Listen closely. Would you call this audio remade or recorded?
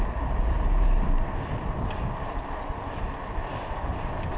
recorded